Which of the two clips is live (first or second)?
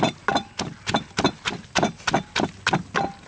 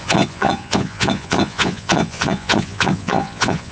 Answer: first